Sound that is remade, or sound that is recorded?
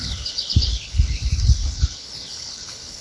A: remade